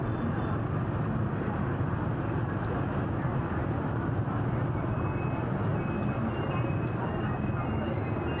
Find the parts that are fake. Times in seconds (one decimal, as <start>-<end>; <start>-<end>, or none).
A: 1.2-2.8; 3.6-4.6